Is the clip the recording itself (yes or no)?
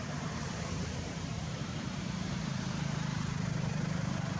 no